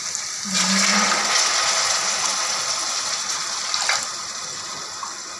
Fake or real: real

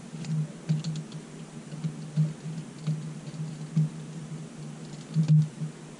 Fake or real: real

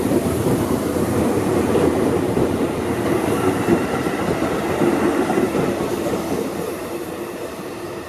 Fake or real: fake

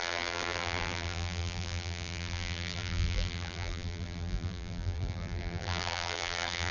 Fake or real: fake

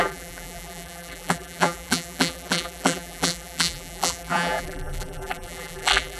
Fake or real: fake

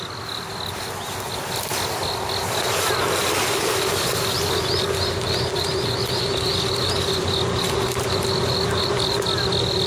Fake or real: real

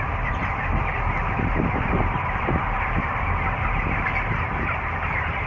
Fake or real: fake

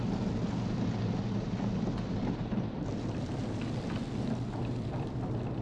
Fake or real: real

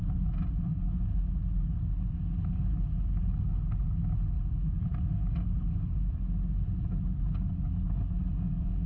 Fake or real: real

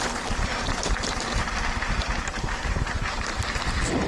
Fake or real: fake